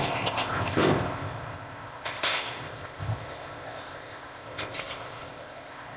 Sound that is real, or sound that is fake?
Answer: fake